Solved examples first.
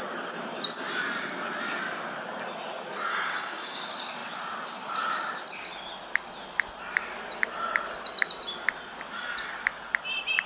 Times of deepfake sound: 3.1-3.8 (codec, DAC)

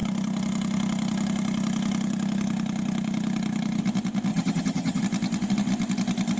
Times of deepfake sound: 4.3-5.0 (vocoder, HiFi-GAN)

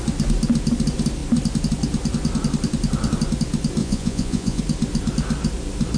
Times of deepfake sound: 3.8-4.6 (vocoder, Vocos)

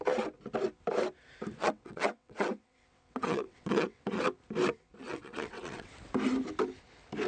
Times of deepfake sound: 1.6-4.2 (vocoder, WaveNeXt); 5.0-5.9

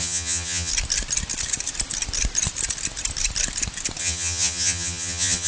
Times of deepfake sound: 0.0-0.7 (vocoder, HiFi-GAN); 4.0-5.5

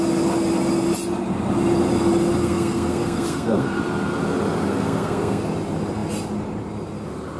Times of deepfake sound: 2.4-3.8 (codec, SNAC); 4.6-5.4

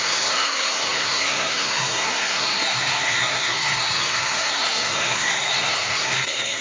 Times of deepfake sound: 0.0-6.6 (codec, SNAC)

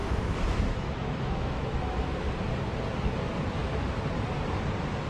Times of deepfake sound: 0.0-2.2 (autoencoder, DAC-VAE)